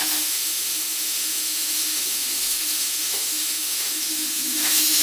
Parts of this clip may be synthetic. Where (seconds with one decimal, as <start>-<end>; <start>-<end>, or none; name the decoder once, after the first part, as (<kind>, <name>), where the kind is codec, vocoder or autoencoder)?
0.0-5.0 (autoencoder, DAC-VAE)